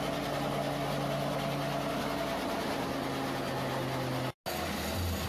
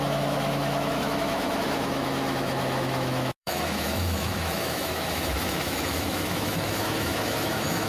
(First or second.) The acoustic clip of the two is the first